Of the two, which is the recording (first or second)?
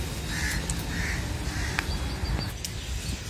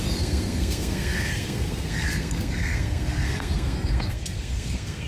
first